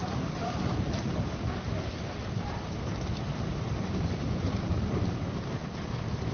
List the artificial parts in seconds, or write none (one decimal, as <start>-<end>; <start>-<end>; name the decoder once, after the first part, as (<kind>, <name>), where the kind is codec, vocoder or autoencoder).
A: 0.0-3.1 (vocoder, BigVGAN v2); 3.8-6.3